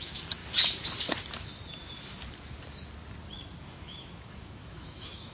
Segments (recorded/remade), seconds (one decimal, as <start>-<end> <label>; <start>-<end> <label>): 0.0-0.4 remade; 0.4-3.6 recorded; 3.6-5.3 remade